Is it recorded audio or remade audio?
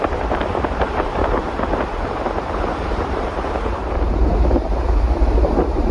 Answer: remade